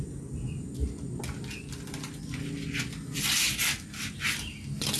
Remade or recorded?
recorded